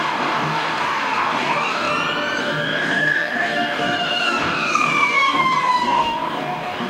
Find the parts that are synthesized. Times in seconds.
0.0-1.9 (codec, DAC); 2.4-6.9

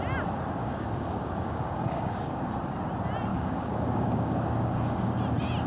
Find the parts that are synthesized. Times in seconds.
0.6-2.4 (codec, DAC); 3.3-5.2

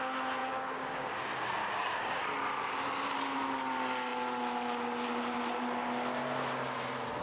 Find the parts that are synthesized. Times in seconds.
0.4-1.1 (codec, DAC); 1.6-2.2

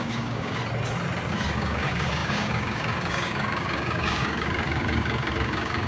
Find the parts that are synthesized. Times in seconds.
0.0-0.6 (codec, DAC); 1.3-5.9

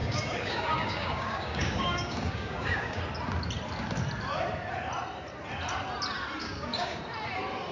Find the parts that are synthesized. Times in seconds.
0.0-3.0 (codec, DAC); 6.4-7.0